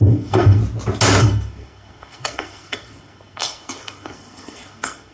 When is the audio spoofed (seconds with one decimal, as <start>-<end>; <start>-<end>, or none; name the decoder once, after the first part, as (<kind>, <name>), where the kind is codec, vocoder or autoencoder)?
0.0-0.6 (codec, SNAC); 1.2-5.1